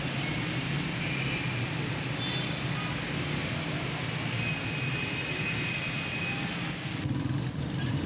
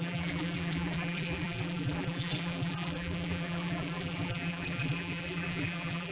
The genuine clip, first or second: first